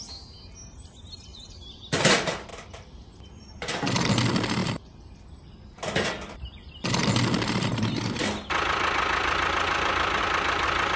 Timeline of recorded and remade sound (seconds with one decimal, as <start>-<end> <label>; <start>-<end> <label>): 0.0-2.5 recorded; 2.5-3.5 remade; 3.5-4.6 recorded; 4.6-6.4 remade; 6.4-11.0 recorded